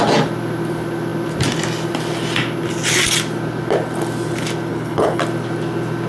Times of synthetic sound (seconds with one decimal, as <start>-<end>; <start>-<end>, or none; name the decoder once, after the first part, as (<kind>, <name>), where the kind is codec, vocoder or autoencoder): 4.7-5.2 (codec, HILCodec)